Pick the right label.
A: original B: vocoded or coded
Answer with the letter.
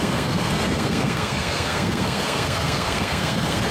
B